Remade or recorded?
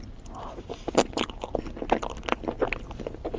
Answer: recorded